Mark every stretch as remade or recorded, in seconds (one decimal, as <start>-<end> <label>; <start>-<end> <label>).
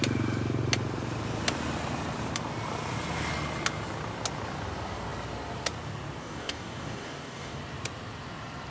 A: 0.0-6.2 recorded; 6.2-7.6 remade; 7.6-8.7 recorded